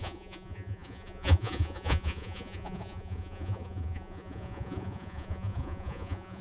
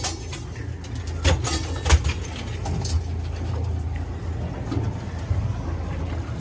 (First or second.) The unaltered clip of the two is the second